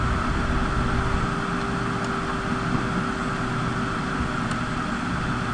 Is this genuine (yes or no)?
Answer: yes